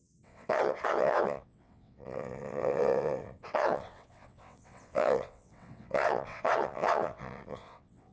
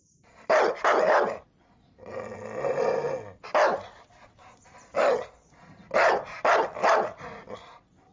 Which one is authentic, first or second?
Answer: second